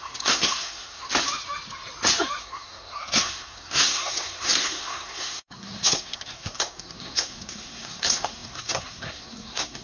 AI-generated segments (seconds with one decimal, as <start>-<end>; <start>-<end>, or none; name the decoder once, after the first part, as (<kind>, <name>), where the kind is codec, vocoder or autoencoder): 0.0-1.1 (codec, SNAC); 2.4-9.8